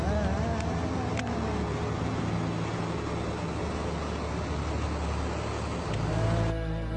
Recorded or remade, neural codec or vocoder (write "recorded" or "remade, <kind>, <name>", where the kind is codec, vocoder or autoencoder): recorded